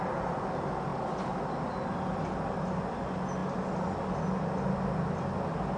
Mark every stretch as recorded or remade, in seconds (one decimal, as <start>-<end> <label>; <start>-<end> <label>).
0.0-5.8 recorded